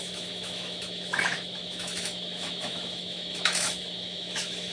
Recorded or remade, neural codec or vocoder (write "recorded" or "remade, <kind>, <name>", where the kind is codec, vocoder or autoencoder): remade, autoencoder, DAC-VAE